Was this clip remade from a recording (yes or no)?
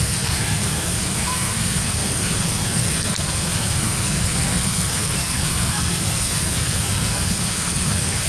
yes